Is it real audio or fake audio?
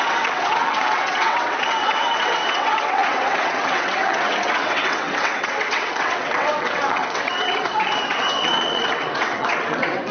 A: fake